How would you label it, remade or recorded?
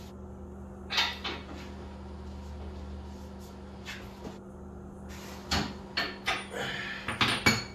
recorded